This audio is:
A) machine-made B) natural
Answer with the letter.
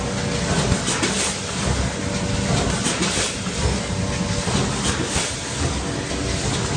B